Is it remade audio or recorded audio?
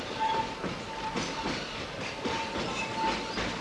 recorded